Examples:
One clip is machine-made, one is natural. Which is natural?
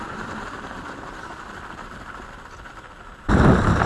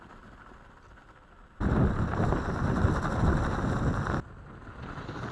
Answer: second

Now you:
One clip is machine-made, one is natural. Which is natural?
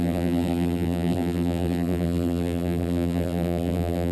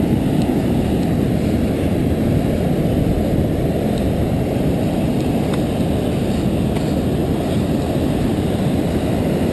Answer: second